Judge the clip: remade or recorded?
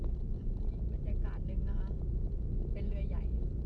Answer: recorded